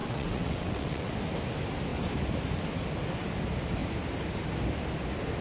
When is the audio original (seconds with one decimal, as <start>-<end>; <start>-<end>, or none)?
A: 1.1-5.4